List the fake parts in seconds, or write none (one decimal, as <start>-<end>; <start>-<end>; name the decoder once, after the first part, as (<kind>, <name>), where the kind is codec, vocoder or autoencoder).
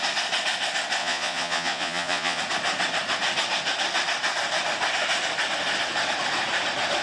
1.0-2.4 (vocoder, Vocos)